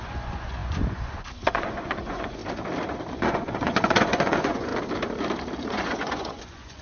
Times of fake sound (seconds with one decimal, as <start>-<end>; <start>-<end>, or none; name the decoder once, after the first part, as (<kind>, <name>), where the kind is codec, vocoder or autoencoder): 0.0-2.4 (vocoder, Vocos); 3.1-4.7; 5.7-6.8

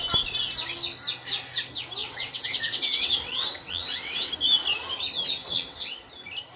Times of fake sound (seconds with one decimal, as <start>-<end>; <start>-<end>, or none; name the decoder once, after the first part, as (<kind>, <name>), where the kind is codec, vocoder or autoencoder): 2.0-4.3 (vocoder, WaveNeXt); 5.4-6.1